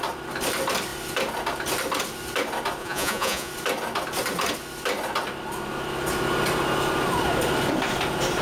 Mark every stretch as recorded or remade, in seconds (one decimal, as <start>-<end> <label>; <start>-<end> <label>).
0.0-2.8 recorded; 2.8-3.5 remade; 3.5-8.4 recorded